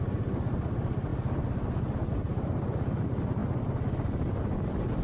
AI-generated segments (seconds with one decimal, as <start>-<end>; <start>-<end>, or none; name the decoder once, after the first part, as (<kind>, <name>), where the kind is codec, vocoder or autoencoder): none